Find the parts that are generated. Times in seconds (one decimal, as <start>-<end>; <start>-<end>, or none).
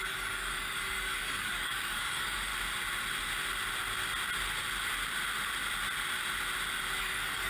0.0-2.5; 7.0-7.5